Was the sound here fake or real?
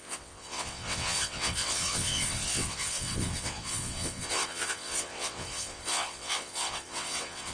fake